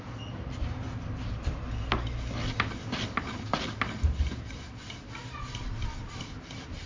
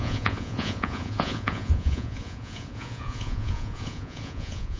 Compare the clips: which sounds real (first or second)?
first